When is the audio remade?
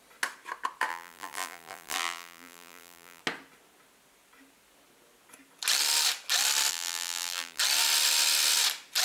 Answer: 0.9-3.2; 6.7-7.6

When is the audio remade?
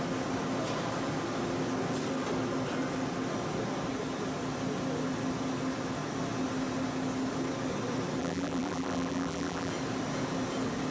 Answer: 8.2-9.7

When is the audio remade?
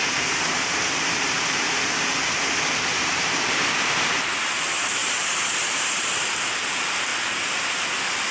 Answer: 2.9-4.3; 5.0-6.4